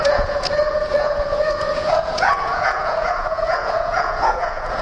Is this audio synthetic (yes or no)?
yes